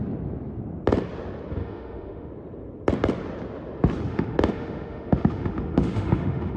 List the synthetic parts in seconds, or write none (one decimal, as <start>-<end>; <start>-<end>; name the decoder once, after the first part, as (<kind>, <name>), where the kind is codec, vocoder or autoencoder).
1.6-2.3 (autoencoder, DAC-VAE); 4.1-6.6